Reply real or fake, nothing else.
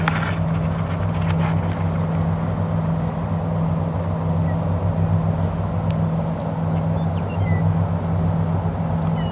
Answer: real